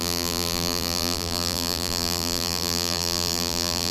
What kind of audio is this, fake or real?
fake